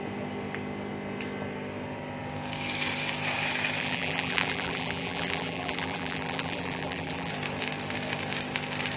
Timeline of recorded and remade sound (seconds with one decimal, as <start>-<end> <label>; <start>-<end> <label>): 0.0-3.8 recorded; 3.8-7.3 remade; 7.3-9.0 recorded